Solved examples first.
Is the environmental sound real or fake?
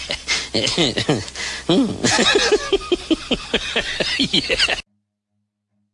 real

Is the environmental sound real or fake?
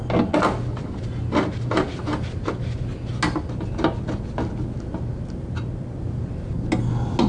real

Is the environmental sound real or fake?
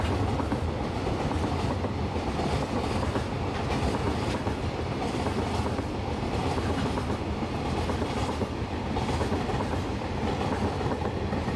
real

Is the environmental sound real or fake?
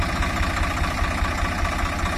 real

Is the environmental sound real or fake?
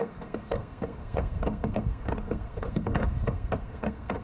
fake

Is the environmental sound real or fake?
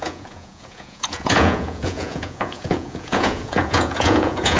fake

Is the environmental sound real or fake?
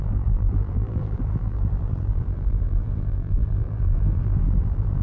fake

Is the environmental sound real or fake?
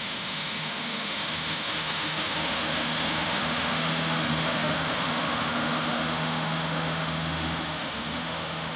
fake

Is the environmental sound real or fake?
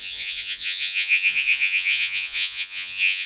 fake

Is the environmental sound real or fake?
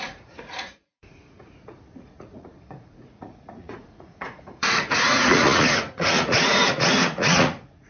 fake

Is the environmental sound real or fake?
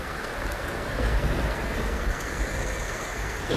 fake